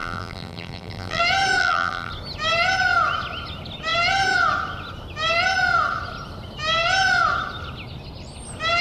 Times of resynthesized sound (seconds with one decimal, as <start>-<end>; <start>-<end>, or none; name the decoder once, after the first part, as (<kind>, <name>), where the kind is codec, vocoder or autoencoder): 0.0-1.2 (vocoder, BigVGAN v2); 1.6-2.1